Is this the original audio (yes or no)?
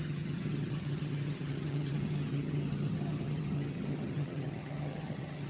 no